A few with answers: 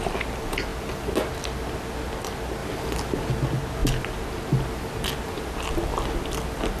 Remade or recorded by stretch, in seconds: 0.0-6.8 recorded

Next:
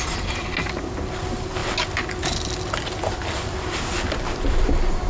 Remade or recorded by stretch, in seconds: 0.0-5.1 recorded

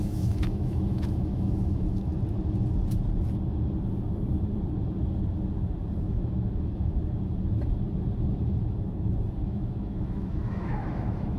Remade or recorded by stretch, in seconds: 0.0-2.1 remade; 2.1-6.0 recorded; 6.0-7.0 remade; 7.0-9.4 recorded; 9.4-11.4 remade